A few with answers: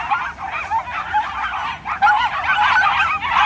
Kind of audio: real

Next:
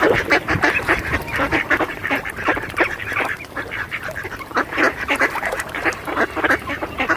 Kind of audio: fake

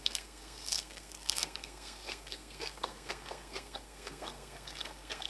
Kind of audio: fake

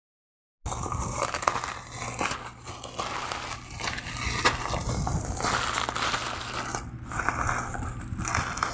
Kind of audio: real